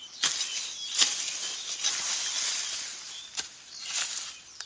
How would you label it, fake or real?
real